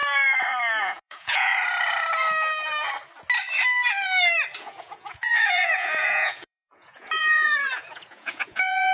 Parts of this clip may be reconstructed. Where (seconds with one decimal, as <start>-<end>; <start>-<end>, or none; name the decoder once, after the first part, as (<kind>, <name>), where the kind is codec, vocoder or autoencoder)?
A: 0.8-1.5 (vocoder, Vocos); 4.6-8.9